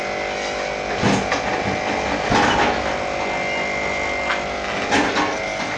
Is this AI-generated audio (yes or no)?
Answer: no